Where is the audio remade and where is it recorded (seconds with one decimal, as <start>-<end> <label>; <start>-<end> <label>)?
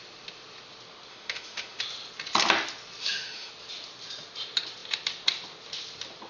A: 0.0-1.1 recorded; 1.1-1.8 remade; 1.8-3.0 recorded; 3.0-3.5 remade; 3.5-6.3 recorded